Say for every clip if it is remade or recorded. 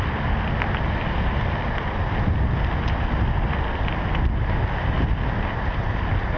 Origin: recorded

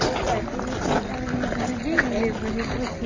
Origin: recorded